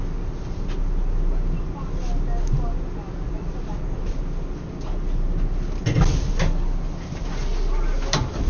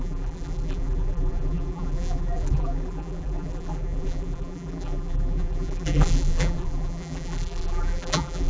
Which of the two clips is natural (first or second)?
first